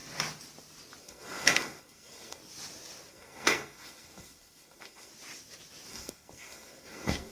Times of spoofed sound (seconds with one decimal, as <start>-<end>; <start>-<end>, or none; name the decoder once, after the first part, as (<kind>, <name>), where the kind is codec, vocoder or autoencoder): 1.0-2.4 (codec, SNAC); 3.1-5.1; 5.9-7.3